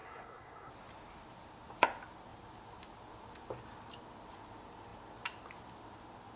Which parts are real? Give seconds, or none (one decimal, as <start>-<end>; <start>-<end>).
0.7-6.4

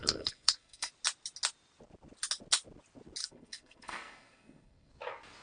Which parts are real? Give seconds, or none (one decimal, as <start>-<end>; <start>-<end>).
0.9-3.2; 4.9-5.4

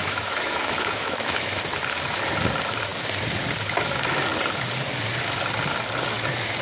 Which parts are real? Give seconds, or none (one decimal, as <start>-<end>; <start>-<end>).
1.6-6.6

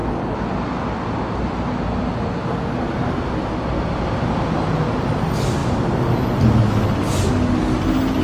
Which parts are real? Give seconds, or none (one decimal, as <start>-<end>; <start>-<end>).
0.0-8.2

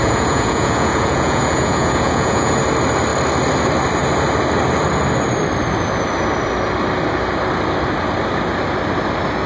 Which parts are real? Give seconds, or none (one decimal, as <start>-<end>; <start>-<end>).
2.6-9.5